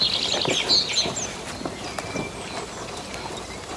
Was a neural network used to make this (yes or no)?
no